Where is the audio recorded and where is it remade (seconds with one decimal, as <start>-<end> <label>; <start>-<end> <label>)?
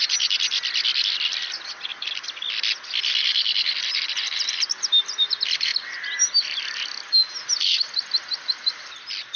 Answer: 0.0-9.4 recorded